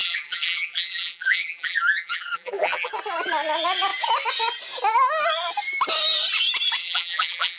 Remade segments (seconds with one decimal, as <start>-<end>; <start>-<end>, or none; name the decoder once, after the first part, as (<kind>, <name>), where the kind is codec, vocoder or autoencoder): 0.0-2.9 (vocoder, BigVGAN v2); 6.8-7.6